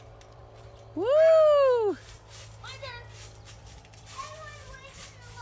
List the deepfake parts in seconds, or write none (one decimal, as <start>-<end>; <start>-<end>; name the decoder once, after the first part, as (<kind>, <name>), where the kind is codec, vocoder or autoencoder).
0.0-0.4 (vocoder, BigVGAN v2); 3.6-5.4